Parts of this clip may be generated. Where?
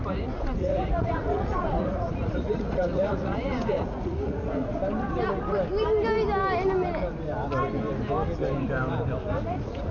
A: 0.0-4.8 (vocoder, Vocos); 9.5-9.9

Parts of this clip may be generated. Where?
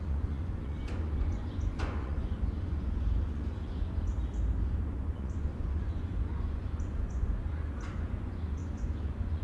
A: 0.0-4.1 (vocoder, Vocos); 4.6-9.4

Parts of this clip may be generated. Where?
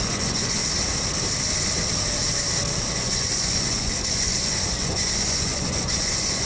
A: 0.0-0.6 (vocoder, Vocos); 2.9-6.5